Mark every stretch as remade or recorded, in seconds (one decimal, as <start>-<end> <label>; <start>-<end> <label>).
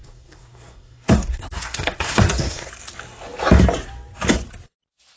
0.0-2.7 remade; 2.7-5.2 recorded